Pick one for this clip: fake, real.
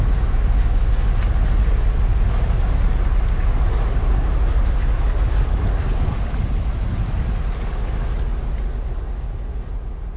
real